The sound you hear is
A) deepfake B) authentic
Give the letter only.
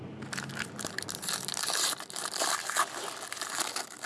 B